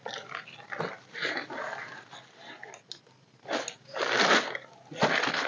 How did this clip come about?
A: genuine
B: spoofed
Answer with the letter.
A